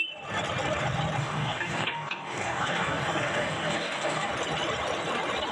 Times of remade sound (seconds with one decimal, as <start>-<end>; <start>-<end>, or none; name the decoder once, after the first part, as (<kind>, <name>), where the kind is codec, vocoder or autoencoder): 1.2-4.3 (codec, DAC)